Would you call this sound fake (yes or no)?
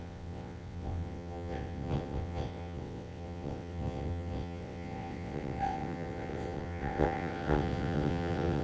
yes